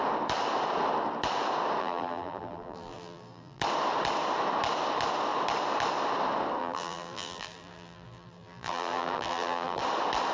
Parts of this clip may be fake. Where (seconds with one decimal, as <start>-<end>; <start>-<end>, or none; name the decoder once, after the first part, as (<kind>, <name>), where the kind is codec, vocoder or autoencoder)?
1.8-3.6 (vocoder, BigVGAN v2); 6.6-9.8